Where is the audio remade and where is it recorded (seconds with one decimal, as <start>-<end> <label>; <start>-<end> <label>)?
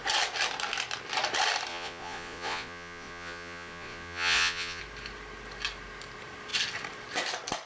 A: 0.0-1.7 recorded; 1.7-4.8 remade; 4.8-7.7 recorded